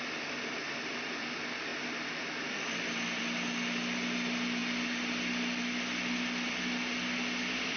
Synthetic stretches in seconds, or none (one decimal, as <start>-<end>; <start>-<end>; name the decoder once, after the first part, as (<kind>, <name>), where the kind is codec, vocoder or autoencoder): none